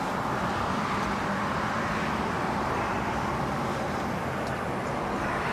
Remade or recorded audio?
remade